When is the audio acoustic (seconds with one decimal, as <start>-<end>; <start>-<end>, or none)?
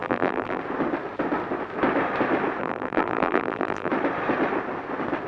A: 0.6-2.6; 3.9-5.3